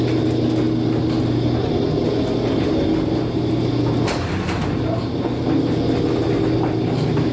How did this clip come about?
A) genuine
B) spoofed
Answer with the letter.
A